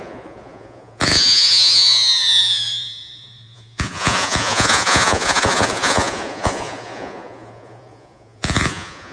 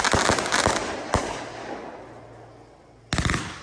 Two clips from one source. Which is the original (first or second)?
second